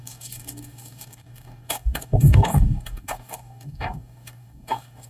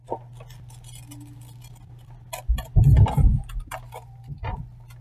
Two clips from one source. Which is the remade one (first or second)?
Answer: first